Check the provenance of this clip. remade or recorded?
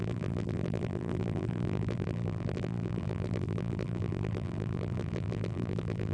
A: remade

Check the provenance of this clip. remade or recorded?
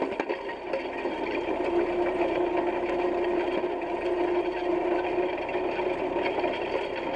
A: recorded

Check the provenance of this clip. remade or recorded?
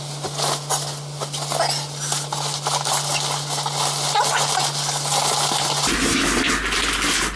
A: recorded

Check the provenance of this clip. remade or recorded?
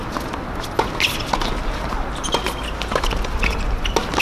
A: recorded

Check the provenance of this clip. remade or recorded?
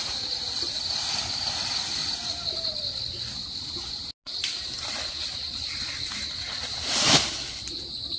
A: recorded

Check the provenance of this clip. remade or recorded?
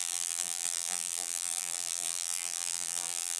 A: remade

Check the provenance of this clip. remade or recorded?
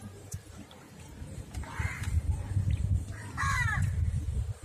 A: remade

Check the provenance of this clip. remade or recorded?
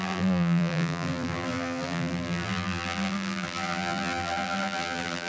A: remade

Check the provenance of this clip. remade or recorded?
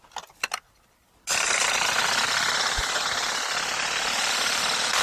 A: remade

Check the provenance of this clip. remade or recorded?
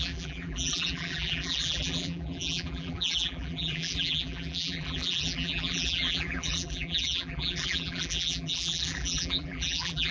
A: remade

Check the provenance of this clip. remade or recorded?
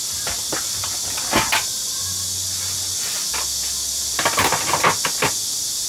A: recorded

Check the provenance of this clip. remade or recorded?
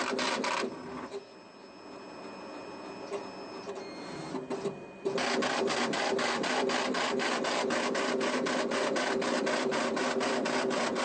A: recorded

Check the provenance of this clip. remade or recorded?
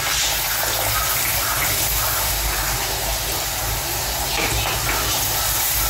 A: recorded